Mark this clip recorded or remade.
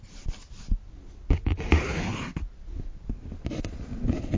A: recorded